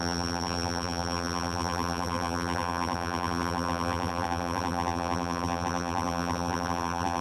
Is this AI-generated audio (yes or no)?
yes